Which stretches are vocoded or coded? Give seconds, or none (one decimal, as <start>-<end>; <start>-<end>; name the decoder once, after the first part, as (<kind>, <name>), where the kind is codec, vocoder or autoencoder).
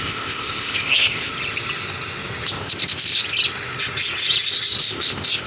0.0-1.3 (codec, ZipCodec); 2.6-3.2; 4.8-5.5